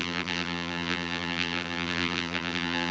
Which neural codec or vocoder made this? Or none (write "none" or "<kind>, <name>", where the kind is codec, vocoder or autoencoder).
vocoder, BigVGAN v2